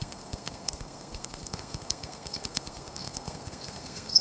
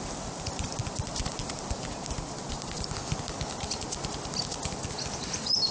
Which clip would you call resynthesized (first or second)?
first